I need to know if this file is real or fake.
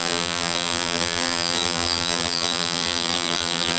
fake